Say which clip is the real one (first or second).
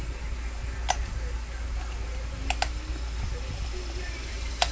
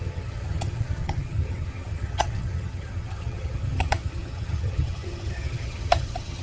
first